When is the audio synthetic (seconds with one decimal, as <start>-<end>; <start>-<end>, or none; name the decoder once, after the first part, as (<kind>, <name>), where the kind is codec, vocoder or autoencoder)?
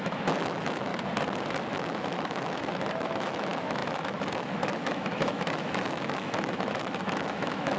0.0-0.9 (autoencoder, DAC-VAE); 1.8-7.8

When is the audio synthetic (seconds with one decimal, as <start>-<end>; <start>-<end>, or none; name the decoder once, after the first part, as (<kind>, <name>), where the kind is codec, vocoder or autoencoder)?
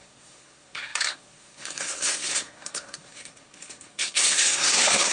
0.0-5.1 (codec, SNAC)